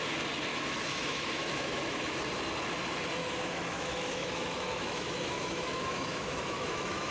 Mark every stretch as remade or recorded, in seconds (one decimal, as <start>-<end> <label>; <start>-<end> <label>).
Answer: 0.0-0.5 recorded; 0.5-2.2 remade; 2.2-3.2 recorded; 3.2-7.1 remade